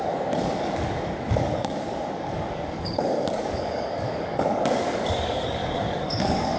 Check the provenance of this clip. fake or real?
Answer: fake